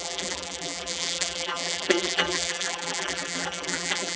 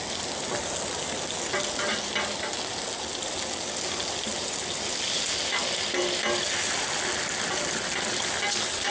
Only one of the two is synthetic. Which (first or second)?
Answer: first